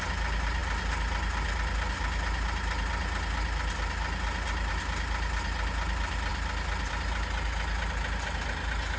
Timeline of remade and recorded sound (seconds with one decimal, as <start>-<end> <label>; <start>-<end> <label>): 0.0-9.0 recorded